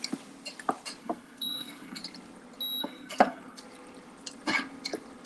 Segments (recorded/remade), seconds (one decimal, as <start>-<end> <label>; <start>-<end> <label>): 0.0-1.0 recorded; 1.0-2.0 remade; 2.0-2.8 recorded; 2.8-3.6 remade; 3.6-5.3 recorded